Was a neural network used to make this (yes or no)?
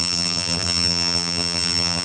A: yes